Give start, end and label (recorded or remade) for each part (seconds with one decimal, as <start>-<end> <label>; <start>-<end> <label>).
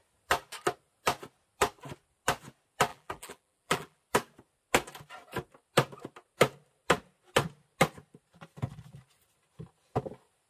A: 0.0-2.9 recorded; 2.9-4.0 remade; 4.0-10.5 recorded